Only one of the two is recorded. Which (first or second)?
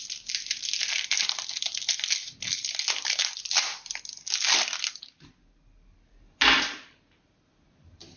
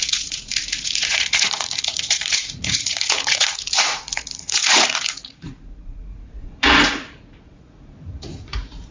first